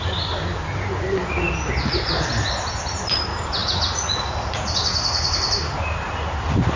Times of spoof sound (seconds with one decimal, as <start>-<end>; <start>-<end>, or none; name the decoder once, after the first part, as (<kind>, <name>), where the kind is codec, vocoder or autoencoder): 3.6-4.7 (vocoder, Vocos)